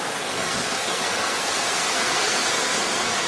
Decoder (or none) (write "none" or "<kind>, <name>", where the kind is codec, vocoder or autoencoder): codec, SNAC